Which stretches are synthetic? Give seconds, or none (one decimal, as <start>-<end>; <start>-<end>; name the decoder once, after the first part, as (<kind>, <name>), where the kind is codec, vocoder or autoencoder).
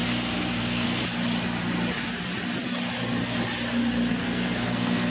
0.6-1.0 (codec, SNAC); 4.1-5.1